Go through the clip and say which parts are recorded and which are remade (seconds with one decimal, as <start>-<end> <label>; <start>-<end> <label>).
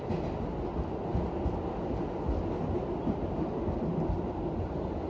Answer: 0.0-5.1 recorded